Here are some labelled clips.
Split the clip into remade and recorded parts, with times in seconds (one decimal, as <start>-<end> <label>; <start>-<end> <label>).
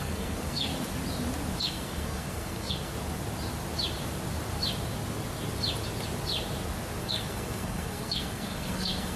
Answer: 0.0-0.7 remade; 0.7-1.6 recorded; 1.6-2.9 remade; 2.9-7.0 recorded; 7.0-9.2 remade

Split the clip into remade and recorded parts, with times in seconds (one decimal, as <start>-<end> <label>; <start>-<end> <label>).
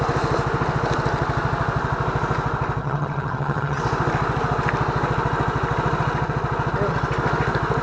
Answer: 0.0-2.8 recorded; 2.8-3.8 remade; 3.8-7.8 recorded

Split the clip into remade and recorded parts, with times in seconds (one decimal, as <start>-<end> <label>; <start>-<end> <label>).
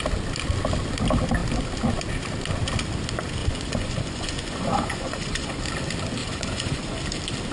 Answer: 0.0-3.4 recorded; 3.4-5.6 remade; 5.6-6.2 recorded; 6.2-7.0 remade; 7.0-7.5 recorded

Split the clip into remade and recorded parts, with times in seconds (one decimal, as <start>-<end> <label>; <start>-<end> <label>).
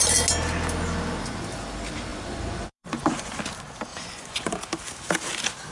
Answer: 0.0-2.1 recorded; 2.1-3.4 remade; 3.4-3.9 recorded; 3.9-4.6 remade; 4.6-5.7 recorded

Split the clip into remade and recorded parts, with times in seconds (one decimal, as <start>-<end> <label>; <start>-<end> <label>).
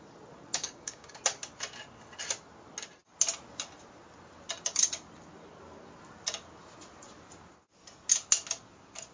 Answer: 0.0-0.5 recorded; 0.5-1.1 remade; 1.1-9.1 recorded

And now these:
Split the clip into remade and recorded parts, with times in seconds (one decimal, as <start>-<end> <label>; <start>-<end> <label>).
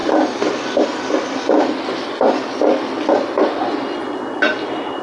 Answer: 0.0-5.0 recorded